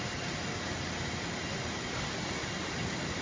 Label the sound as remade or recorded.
recorded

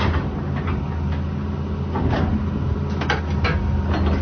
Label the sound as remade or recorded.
recorded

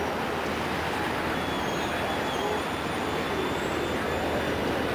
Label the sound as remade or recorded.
recorded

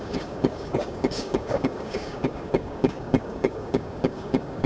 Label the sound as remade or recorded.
remade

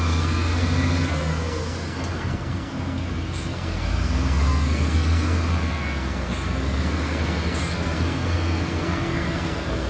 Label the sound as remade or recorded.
remade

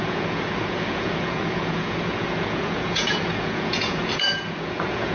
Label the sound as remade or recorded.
remade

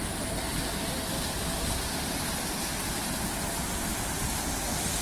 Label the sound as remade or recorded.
recorded